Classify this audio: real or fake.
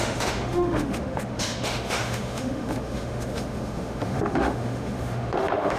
fake